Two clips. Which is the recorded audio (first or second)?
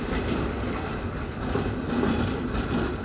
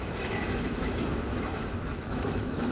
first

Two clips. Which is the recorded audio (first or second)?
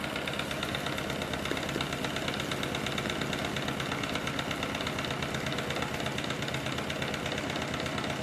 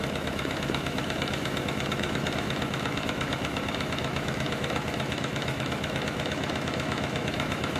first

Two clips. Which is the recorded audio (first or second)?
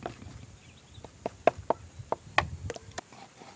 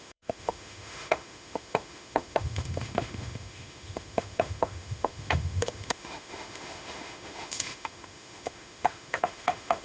first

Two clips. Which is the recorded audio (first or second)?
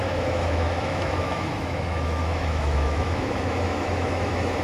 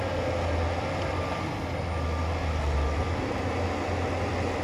second